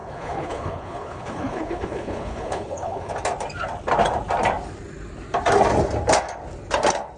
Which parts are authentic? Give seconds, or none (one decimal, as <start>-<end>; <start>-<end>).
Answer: 3.1-7.2